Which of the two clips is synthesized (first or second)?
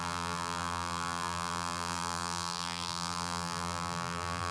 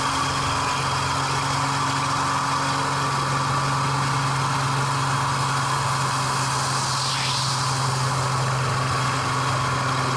first